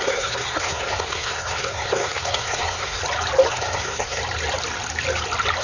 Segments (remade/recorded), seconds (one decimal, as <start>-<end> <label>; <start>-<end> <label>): 0.0-3.0 remade; 3.0-3.5 recorded; 3.5-4.2 remade; 4.2-5.6 recorded